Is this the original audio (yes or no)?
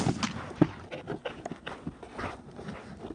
yes